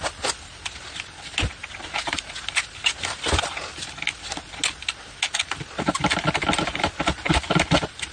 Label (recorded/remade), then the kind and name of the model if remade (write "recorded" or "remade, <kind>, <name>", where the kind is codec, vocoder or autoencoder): recorded